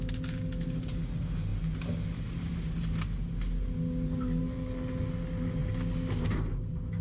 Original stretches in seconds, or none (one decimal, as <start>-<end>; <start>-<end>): 0.0-7.0